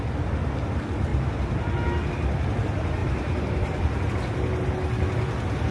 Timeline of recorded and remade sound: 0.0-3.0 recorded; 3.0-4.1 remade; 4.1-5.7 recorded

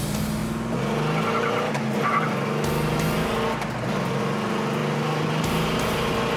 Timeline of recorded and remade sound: 0.0-6.4 recorded

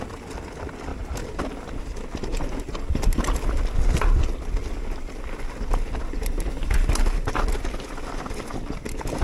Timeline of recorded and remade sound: 0.0-0.9 recorded; 0.9-1.8 remade; 1.8-9.2 recorded

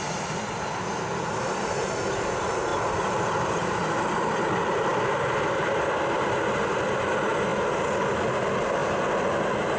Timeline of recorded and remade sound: 0.0-2.7 recorded; 2.7-4.5 remade; 4.5-8.8 recorded; 8.8-9.4 remade; 9.4-9.8 recorded

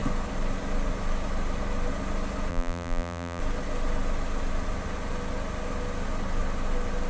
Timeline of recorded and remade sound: 0.0-2.5 recorded; 2.5-3.4 remade; 3.4-7.1 recorded